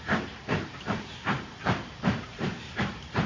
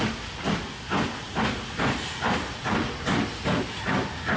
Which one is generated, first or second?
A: first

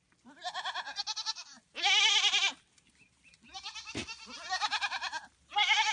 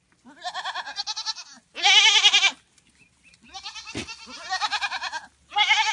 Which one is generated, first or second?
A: first